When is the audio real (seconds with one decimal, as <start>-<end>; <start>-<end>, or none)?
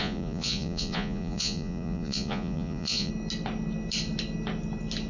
3.1-5.1